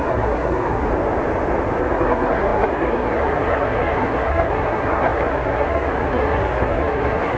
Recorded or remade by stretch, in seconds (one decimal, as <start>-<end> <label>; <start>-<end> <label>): 0.0-0.9 remade; 0.9-1.8 recorded; 1.8-7.4 remade